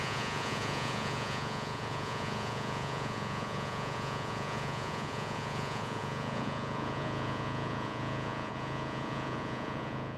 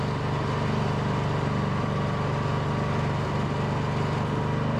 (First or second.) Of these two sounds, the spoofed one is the first